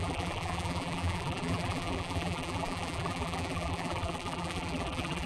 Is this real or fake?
fake